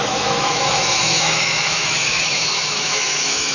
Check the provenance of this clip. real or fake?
fake